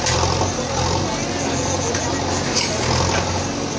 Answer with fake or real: real